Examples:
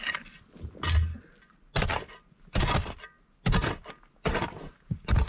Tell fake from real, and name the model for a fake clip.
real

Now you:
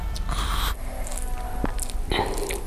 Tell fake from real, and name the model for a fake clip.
real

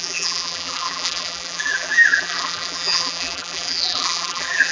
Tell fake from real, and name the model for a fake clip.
fake, vocoder, BigVGAN v2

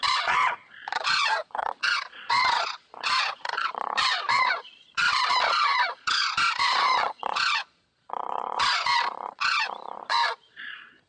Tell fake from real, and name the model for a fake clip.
fake, vocoder, Vocos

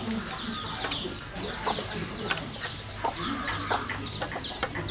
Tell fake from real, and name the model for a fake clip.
real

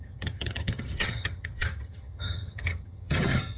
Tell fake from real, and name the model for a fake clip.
fake, vocoder, HiFi-GAN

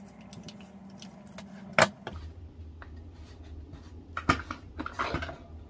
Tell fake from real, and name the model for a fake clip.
real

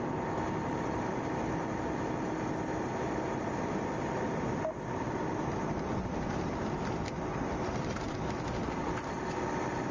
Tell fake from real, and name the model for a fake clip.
real